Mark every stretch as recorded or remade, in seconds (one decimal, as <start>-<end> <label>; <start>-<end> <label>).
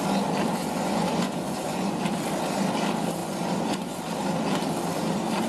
0.0-0.6 recorded; 0.6-2.0 remade; 2.0-3.2 recorded; 3.2-4.0 remade; 4.0-5.5 recorded